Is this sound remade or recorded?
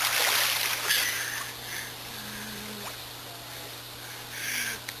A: recorded